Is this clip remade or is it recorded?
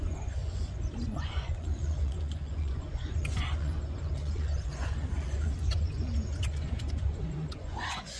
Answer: remade